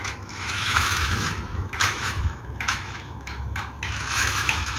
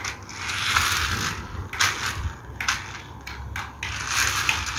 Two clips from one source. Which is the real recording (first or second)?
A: second